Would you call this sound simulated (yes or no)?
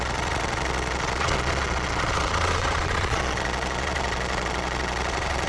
yes